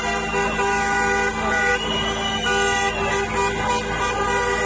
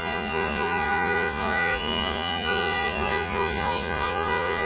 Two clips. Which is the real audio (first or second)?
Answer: first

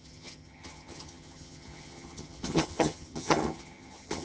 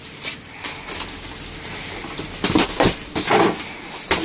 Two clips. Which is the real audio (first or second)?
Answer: second